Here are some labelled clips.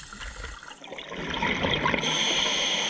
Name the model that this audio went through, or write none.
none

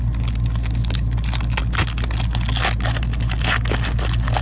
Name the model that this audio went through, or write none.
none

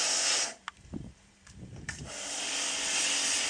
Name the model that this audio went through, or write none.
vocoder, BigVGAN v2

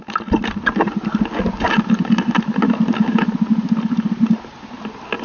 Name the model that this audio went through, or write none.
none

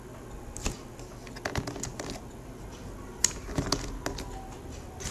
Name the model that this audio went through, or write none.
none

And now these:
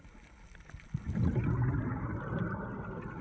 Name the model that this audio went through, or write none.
none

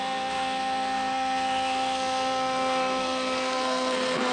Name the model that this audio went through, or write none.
codec, SNAC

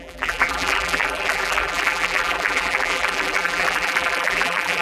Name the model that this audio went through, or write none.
vocoder, BigVGAN v2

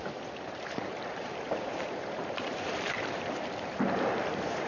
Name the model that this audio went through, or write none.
vocoder, BigVGAN v2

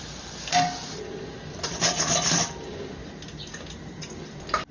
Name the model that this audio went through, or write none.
none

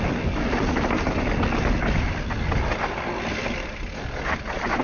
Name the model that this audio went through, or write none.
none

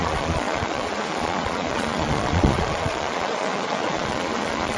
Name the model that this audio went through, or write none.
vocoder, Vocos